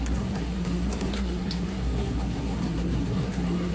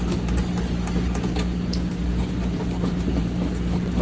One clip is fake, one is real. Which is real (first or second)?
second